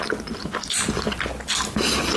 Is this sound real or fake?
real